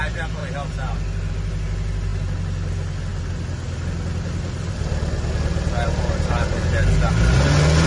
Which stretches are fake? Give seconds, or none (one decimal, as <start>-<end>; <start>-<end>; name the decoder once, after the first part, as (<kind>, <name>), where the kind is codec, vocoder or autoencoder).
none